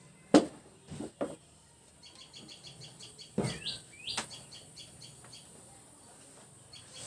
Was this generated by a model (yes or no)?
no